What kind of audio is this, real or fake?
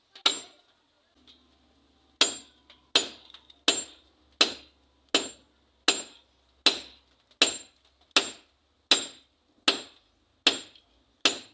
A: real